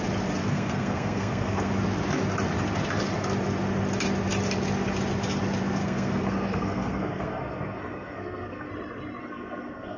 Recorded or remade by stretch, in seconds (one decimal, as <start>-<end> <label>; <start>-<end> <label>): 0.0-0.4 recorded; 0.4-1.7 remade; 1.7-5.8 recorded; 5.8-8.7 remade; 8.7-9.2 recorded; 9.2-10.0 remade